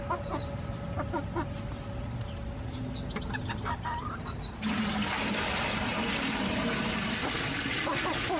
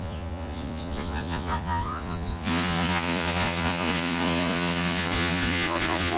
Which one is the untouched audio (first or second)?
first